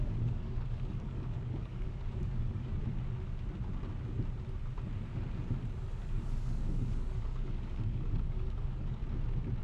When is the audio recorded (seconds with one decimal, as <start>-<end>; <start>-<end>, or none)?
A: 2.8-6.0; 9.0-9.6